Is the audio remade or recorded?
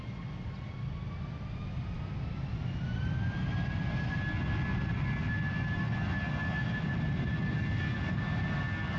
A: recorded